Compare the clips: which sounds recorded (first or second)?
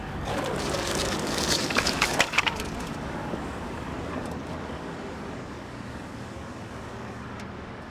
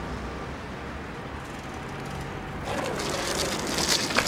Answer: second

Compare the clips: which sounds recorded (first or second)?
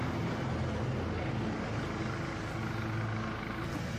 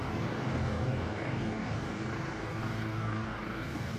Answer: first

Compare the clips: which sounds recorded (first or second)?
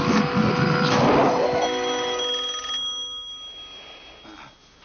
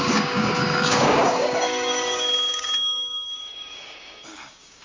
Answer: first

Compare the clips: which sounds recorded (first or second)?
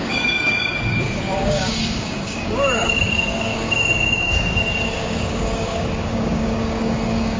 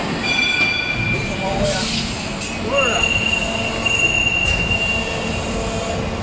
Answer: second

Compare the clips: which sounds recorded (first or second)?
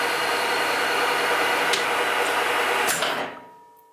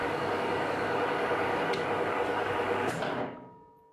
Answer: first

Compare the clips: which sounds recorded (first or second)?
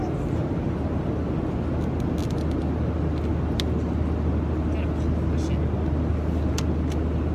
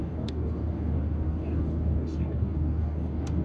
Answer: first